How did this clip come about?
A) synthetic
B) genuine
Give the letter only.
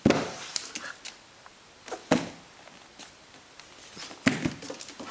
B